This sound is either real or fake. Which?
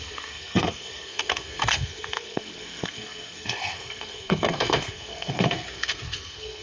fake